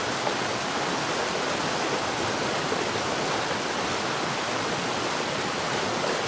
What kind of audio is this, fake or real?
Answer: real